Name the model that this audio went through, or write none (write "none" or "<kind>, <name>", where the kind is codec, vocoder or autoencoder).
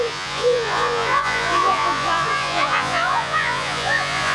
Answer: vocoder, Vocos